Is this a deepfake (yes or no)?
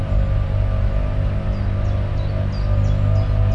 no